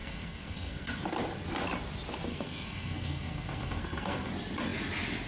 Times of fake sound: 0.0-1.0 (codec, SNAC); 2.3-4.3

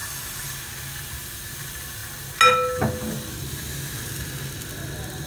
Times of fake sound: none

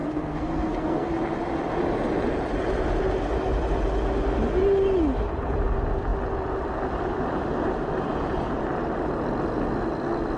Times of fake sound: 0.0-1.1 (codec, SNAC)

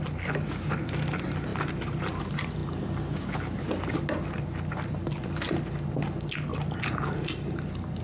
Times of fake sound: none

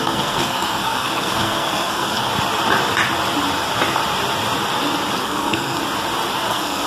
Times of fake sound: 0.0-2.3 (codec, SNAC); 5.2-5.8; 6.5-6.9

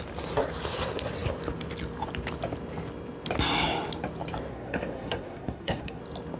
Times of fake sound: 4.5-6.0 (codec, SNAC)

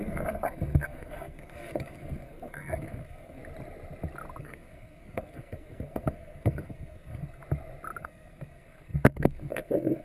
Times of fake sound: 0.0-3.4 (codec, SNAC); 4.4-7.4; 8.0-10.0